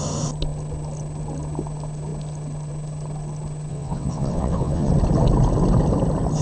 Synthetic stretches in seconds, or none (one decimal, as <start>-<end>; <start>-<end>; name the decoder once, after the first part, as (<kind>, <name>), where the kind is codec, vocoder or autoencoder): 3.7-4.9 (vocoder, WaveNeXt)